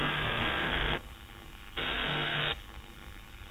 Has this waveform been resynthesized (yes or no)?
yes